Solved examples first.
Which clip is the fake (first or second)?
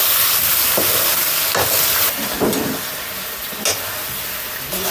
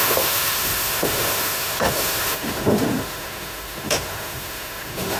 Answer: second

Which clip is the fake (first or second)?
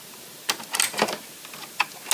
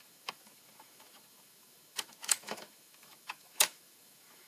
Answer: second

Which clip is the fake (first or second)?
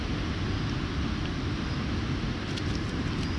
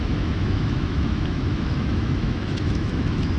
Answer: second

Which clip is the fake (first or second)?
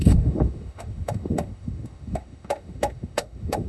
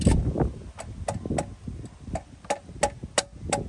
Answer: first